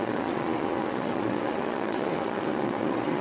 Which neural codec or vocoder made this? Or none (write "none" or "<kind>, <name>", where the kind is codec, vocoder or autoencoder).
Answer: vocoder, Vocos